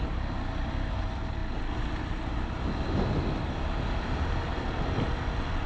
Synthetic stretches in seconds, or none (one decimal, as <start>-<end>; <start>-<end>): none